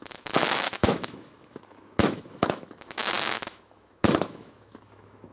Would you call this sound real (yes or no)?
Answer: no